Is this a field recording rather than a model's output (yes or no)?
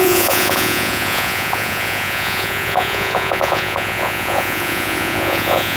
no